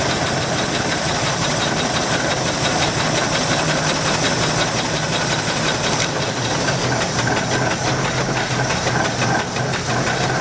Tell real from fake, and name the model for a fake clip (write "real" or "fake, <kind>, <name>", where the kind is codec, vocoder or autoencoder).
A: real